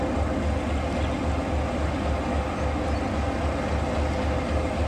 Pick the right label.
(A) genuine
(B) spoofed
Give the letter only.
A